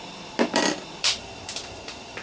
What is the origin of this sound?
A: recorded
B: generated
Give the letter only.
B